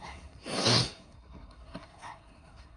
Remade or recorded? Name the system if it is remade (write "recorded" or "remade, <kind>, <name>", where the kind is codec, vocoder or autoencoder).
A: remade, codec, SNAC